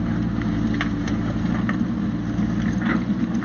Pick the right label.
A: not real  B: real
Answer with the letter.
B